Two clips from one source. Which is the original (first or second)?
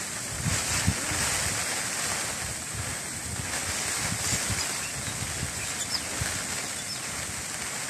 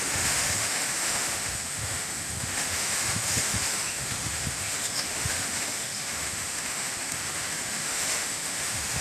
first